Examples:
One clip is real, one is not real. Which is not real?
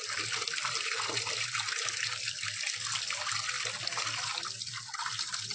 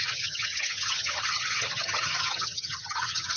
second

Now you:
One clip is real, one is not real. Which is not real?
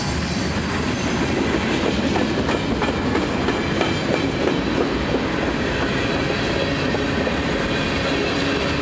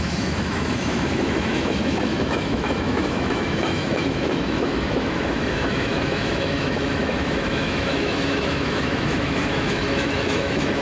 second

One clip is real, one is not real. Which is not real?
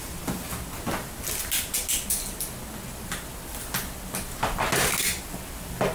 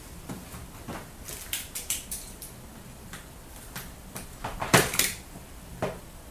second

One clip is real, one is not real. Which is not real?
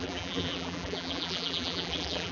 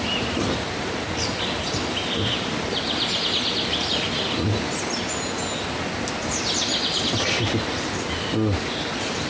first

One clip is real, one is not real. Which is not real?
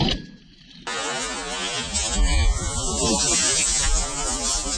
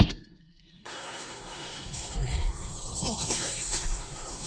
second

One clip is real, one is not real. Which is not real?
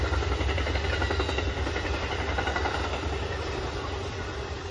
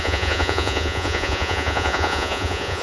second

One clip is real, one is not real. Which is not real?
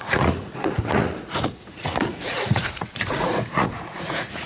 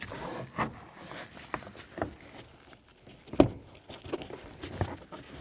first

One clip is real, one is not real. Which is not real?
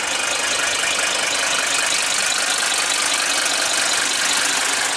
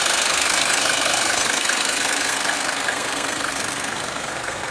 second